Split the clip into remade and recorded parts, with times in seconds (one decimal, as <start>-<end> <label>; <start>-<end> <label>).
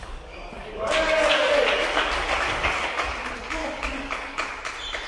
0.0-3.1 remade; 3.1-3.6 recorded; 3.6-4.5 remade; 4.5-5.1 recorded